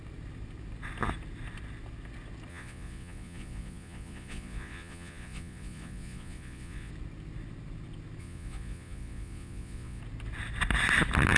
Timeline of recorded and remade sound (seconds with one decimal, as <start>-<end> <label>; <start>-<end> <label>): 0.0-2.5 recorded; 2.5-6.9 remade; 6.9-8.2 recorded; 8.2-10.0 remade; 10.0-11.4 recorded